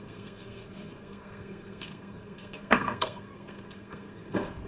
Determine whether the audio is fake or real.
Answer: fake